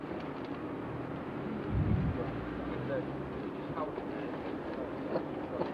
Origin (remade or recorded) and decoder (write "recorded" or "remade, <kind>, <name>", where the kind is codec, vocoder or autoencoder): recorded